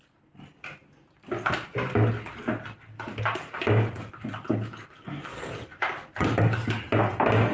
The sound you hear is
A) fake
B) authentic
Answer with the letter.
B